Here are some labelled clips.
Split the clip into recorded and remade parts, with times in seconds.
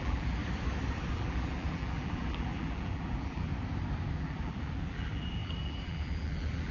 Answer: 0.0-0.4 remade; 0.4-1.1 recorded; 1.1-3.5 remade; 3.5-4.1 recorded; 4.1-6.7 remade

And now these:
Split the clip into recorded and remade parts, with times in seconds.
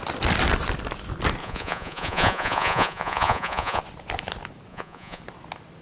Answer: 0.0-1.4 recorded; 1.4-3.8 remade; 3.8-4.7 recorded; 4.7-5.2 remade; 5.2-5.8 recorded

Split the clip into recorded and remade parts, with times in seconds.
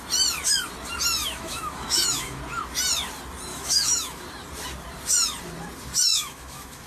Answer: 0.0-1.2 recorded; 1.2-2.4 remade; 2.4-3.5 recorded; 3.5-4.2 remade; 4.2-6.1 recorded; 6.1-6.9 remade